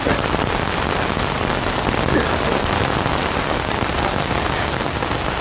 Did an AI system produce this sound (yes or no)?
no